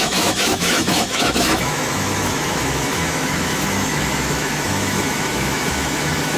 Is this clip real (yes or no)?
no